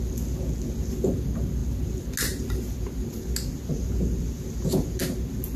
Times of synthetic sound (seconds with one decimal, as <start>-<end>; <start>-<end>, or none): none